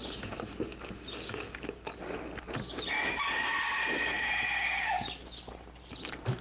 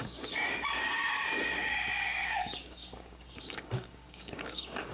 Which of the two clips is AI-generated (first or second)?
second